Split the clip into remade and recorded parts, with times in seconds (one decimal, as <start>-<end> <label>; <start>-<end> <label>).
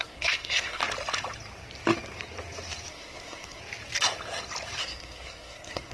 0.0-0.8 remade; 0.8-2.9 recorded; 2.9-3.6 remade; 3.6-4.8 recorded; 4.8-5.9 remade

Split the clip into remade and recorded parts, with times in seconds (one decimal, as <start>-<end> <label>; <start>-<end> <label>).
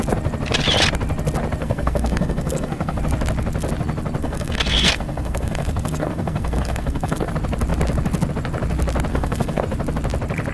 0.0-1.6 recorded; 1.6-3.0 remade; 3.0-4.2 recorded; 4.2-7.3 remade; 7.3-9.1 recorded; 9.1-9.6 remade; 9.6-10.5 recorded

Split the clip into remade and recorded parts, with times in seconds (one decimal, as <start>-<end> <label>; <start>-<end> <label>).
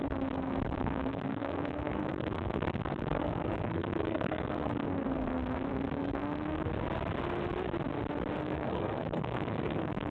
0.0-6.7 remade; 6.7-8.4 recorded; 8.4-10.1 remade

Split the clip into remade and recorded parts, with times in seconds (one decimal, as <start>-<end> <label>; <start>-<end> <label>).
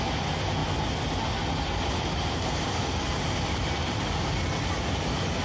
0.0-5.4 recorded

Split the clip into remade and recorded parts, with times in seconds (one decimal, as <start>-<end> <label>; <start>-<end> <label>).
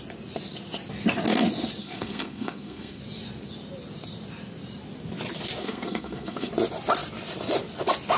0.0-1.8 recorded; 1.8-3.0 remade; 3.0-5.6 recorded; 5.6-6.5 remade; 6.5-8.2 recorded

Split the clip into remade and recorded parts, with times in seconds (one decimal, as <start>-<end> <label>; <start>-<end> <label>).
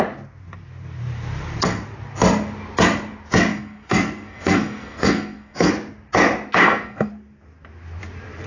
0.0-3.5 recorded; 3.5-5.7 remade; 5.7-6.6 recorded; 6.6-7.1 remade; 7.1-8.5 recorded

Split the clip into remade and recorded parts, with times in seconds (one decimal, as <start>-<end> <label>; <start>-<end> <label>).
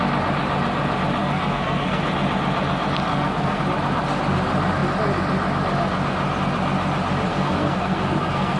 0.0-1.2 recorded; 1.2-2.0 remade; 2.0-3.1 recorded; 3.1-3.6 remade; 3.6-7.3 recorded; 7.3-8.6 remade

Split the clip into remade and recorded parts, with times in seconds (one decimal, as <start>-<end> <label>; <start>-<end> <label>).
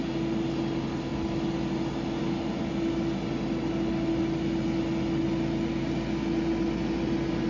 0.0-7.5 recorded